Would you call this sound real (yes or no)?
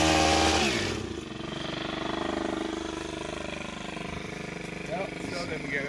yes